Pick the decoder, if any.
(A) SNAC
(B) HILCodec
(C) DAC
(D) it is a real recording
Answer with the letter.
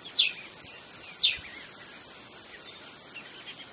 D